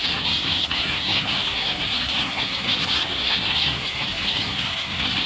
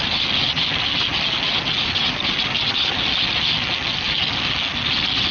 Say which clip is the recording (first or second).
second